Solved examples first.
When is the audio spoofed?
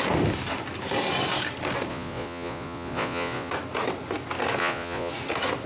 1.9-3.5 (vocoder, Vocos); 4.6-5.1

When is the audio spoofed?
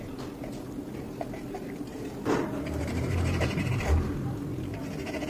1.9-3.9 (vocoder, BigVGAN v2)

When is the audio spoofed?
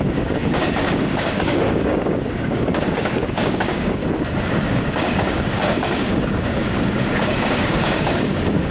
0.0-4.0 (codec, DAC); 4.7-8.7